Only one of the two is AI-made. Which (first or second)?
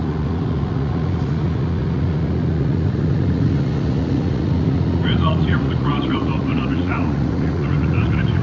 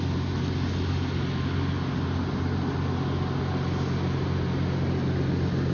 first